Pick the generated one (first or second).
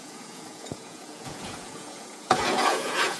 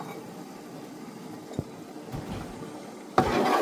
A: first